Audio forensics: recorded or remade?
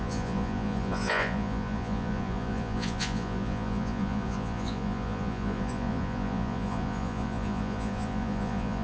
remade